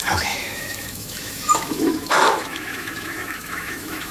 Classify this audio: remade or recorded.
remade